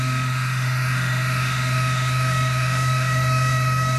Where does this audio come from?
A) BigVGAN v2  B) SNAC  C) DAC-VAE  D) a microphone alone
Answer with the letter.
C